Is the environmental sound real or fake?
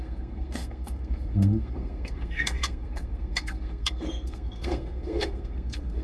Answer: fake